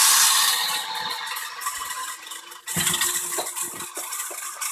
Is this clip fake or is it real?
real